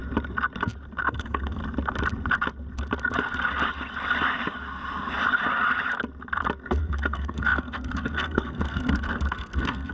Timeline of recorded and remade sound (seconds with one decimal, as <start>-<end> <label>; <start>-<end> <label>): 0.0-1.0 recorded; 1.0-1.6 remade; 1.6-6.8 recorded; 6.8-9.9 remade